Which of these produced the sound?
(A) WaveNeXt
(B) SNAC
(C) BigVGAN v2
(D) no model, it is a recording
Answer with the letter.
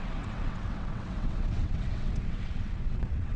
A